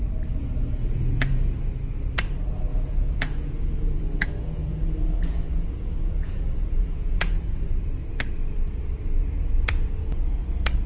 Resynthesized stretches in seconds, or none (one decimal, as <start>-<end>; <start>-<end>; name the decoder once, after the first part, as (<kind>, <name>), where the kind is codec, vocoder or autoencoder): 0.8-1.7 (vocoder, Vocos); 2.7-7.7